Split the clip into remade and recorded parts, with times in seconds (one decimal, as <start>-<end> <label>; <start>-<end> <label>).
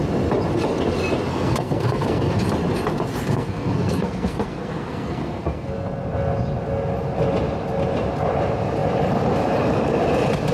0.0-1.3 recorded; 1.3-2.4 remade; 2.4-3.1 recorded; 3.1-5.7 remade; 5.7-10.5 recorded